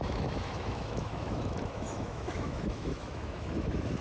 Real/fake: fake